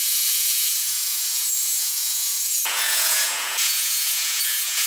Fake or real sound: fake